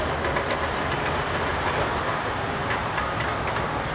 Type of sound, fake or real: real